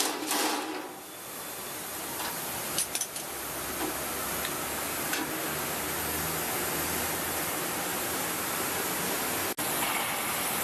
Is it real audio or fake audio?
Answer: real